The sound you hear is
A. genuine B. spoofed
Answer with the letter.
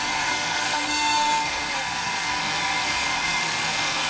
B